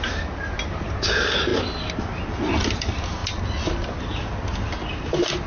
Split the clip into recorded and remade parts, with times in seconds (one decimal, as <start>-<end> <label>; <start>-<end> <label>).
0.0-5.5 recorded